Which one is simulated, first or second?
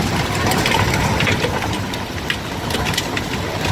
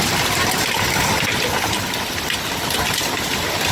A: second